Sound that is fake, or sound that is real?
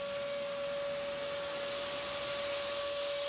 real